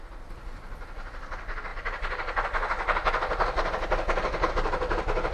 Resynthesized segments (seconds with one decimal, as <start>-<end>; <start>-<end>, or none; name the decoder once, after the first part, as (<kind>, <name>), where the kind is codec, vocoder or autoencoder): none